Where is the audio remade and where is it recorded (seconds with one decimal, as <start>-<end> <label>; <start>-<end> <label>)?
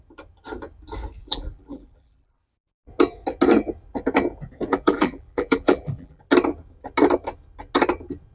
0.0-1.2 recorded; 1.2-2.4 remade; 2.4-4.7 recorded; 4.7-6.2 remade; 6.2-8.3 recorded